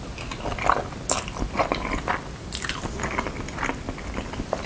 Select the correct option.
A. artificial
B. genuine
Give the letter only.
B